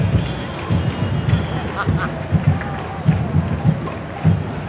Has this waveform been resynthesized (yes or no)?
no